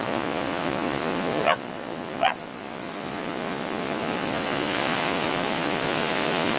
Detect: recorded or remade remade